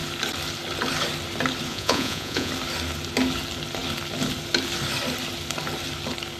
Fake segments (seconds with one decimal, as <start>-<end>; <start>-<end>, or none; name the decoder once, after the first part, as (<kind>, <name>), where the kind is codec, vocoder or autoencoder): 1.7-2.5 (vocoder, Vocos)